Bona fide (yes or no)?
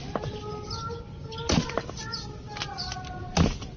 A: yes